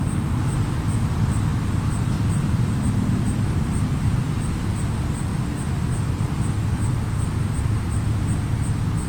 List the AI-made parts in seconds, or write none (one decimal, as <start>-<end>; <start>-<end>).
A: none